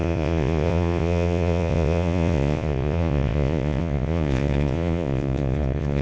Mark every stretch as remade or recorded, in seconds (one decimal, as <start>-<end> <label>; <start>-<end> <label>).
0.0-6.0 remade

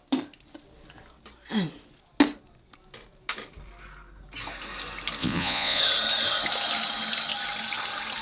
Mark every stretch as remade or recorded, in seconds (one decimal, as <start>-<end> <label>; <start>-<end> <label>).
0.0-5.2 recorded; 5.2-5.8 remade; 5.8-8.2 recorded

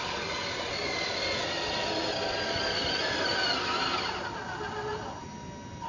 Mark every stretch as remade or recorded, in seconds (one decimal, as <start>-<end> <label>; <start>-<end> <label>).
0.0-5.9 recorded

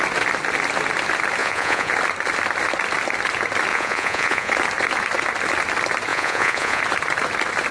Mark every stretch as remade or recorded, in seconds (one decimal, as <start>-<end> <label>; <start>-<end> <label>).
0.0-1.4 recorded; 1.4-1.9 remade; 1.9-3.7 recorded; 3.7-4.5 remade; 4.5-6.1 recorded; 6.1-6.8 remade; 6.8-7.7 recorded

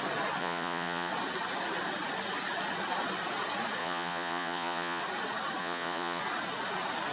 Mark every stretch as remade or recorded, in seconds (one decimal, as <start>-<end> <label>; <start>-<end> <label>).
0.0-0.4 recorded; 0.4-1.1 remade; 1.1-3.8 recorded; 3.8-5.0 remade; 5.0-5.6 recorded; 5.6-6.2 remade; 6.2-7.1 recorded

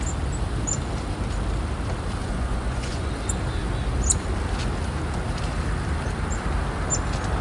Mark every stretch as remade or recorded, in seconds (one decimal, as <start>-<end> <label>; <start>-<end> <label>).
0.0-2.2 recorded; 2.2-3.1 remade; 3.1-7.4 recorded

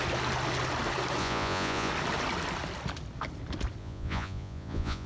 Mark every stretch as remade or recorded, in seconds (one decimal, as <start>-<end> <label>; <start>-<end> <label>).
0.0-1.2 recorded; 1.2-1.9 remade; 1.9-3.8 recorded; 3.8-5.1 remade

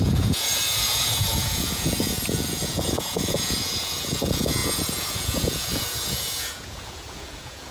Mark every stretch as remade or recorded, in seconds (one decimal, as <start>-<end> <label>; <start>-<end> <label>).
0.0-7.7 remade